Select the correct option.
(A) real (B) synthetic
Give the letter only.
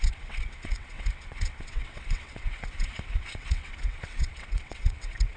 B